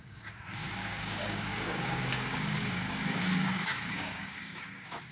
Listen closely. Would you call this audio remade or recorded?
remade